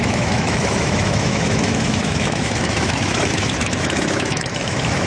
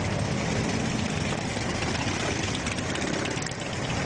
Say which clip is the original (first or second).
second